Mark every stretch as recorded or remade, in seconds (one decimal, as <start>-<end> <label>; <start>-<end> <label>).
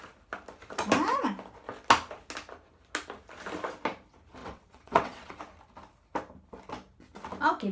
0.0-4.4 recorded; 4.4-5.4 remade; 5.4-7.7 recorded